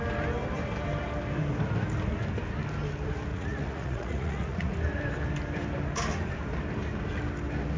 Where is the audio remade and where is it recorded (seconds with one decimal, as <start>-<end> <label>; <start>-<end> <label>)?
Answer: 0.0-3.3 recorded; 3.3-4.7 remade; 4.7-7.8 recorded